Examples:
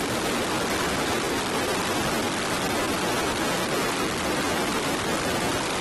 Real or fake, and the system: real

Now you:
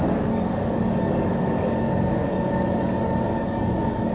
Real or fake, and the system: fake, codec, DAC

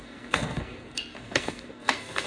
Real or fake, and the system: fake, codec, SNAC